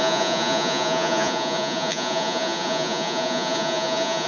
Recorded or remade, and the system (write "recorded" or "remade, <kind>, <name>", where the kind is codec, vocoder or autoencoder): remade, vocoder, Vocos